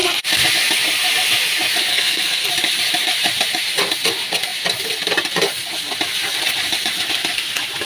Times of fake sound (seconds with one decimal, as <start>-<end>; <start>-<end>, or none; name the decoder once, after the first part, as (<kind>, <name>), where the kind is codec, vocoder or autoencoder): 1.9-2.5 (codec, SNAC)